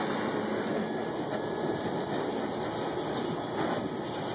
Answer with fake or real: real